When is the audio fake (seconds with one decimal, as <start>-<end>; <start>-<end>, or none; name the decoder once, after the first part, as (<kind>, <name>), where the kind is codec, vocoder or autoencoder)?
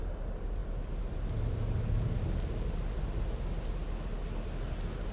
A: none